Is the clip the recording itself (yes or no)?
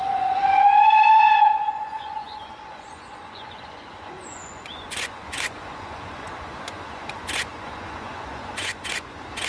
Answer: no